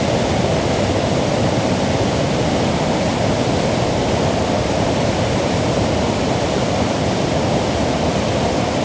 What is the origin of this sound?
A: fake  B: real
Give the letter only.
A